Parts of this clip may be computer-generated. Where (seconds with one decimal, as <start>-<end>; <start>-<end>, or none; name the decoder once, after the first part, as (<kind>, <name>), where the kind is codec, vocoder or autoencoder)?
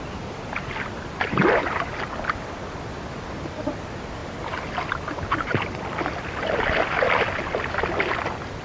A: none